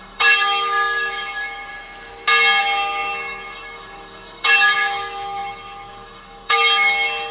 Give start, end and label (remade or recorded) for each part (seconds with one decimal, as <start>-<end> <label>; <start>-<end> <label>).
0.0-1.7 remade; 1.7-2.6 recorded; 2.6-7.3 remade